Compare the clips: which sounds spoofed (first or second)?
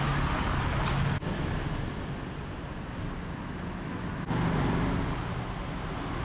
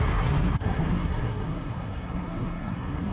second